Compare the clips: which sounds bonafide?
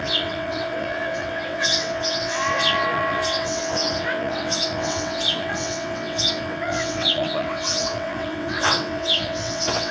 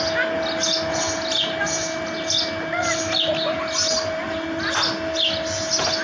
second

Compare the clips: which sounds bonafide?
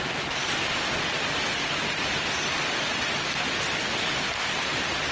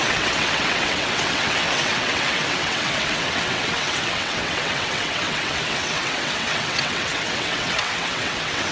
first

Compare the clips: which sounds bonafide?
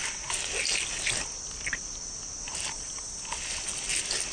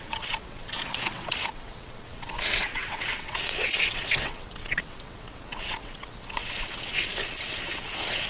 first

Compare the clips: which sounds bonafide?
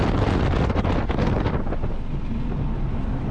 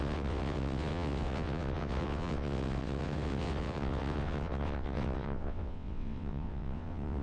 first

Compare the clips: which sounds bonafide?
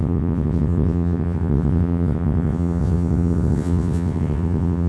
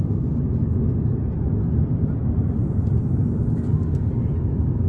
second